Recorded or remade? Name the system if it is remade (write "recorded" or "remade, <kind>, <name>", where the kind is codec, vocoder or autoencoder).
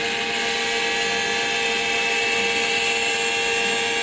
recorded